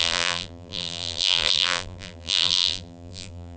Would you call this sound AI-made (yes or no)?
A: yes